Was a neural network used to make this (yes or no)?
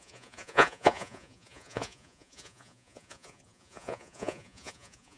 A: yes